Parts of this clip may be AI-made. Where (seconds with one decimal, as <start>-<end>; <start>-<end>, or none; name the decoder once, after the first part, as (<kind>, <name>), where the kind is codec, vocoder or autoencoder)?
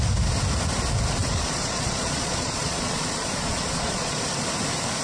1.2-4.2 (vocoder, Vocos)